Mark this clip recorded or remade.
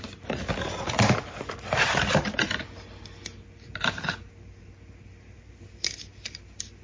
recorded